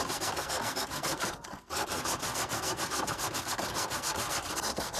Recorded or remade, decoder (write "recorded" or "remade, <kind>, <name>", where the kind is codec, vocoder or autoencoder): remade, codec, SNAC